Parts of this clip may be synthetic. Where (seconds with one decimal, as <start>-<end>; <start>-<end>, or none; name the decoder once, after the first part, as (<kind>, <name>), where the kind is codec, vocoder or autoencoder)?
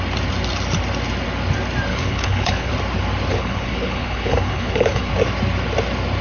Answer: 1.9-2.7 (codec, HILCodec); 3.3-5.1